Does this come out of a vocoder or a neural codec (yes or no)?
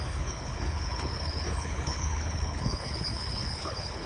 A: yes